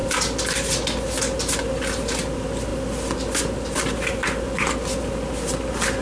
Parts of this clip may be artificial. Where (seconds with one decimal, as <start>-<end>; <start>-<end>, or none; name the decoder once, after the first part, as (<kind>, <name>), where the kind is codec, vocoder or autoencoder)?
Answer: none